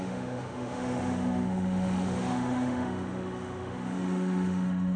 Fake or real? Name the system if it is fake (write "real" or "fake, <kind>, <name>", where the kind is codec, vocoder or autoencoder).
fake, autoencoder, DAC-VAE